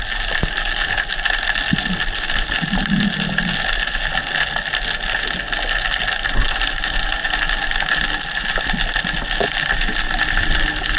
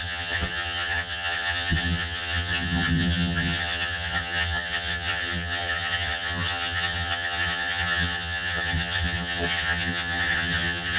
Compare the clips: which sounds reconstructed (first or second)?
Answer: second